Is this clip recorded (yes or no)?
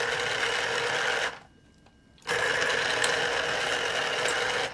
yes